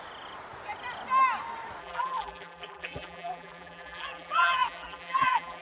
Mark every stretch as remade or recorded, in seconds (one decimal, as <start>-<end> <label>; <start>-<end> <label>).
0.0-1.8 recorded; 1.8-5.6 remade

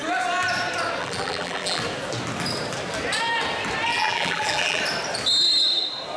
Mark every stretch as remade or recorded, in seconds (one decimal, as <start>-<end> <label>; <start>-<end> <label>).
0.0-1.0 recorded; 1.0-1.8 remade; 1.8-3.9 recorded; 3.9-4.8 remade; 4.8-6.2 recorded

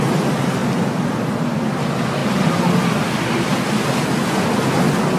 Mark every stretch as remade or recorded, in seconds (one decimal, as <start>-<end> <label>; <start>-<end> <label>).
0.0-0.6 recorded; 0.6-1.3 remade; 1.3-2.2 recorded; 2.2-4.8 remade; 4.8-5.2 recorded